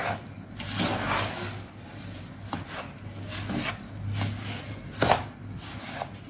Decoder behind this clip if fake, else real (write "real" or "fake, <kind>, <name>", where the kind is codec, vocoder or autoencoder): real